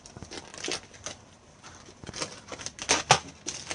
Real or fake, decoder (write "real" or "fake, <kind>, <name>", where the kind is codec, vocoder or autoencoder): real